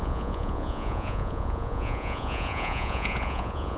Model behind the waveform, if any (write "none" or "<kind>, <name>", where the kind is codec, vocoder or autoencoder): vocoder, Vocos